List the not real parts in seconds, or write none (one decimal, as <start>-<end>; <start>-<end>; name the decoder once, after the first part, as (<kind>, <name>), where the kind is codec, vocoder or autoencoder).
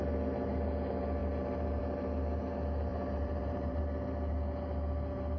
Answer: 2.9-3.8 (vocoder, BigVGAN v2)